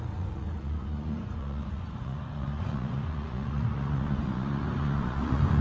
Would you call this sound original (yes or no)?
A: no